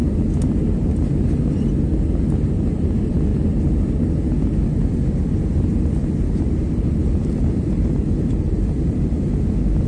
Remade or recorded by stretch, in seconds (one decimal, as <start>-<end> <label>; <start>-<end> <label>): 0.0-7.0 recorded; 7.0-9.0 remade; 9.0-9.9 recorded